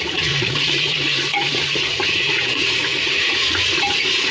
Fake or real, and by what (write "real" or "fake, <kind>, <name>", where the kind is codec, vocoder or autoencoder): fake, vocoder, Vocos